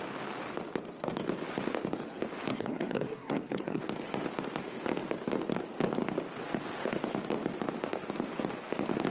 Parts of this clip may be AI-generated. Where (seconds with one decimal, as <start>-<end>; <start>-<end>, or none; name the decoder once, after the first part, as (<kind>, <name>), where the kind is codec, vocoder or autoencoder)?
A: 2.5-3.8 (codec, SNAC)